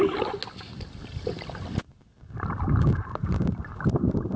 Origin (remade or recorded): recorded